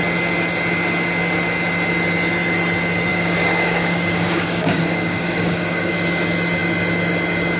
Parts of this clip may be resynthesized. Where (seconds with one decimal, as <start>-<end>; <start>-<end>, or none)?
3.1-5.9